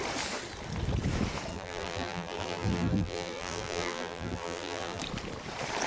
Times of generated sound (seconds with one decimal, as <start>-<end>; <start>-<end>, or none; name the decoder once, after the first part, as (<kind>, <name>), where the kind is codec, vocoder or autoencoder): 1.5-5.0 (vocoder, BigVGAN v2)